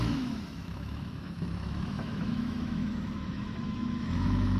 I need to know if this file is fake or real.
fake